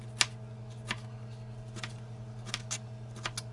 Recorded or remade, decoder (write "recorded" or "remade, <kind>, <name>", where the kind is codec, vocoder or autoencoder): recorded